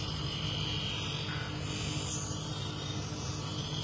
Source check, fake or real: real